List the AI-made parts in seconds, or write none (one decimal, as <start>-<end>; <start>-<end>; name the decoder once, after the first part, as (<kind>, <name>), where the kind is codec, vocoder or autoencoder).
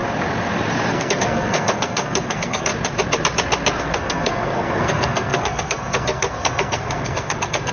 0.9-2.7 (codec, SNAC); 3.8-7.7